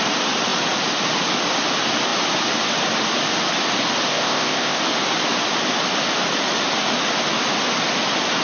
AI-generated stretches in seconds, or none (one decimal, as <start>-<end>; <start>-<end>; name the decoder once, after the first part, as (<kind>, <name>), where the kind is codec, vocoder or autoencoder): 4.1-4.8 (codec, ZipCodec)